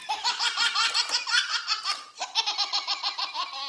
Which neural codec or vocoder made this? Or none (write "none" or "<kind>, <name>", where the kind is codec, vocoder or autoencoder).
none